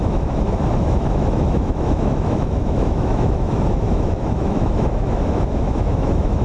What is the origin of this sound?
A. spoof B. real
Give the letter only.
A